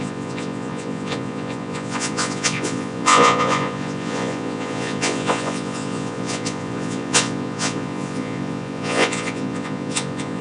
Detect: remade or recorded remade